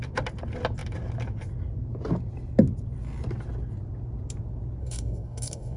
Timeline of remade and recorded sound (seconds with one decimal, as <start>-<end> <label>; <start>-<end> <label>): 0.0-4.8 recorded; 4.8-5.8 remade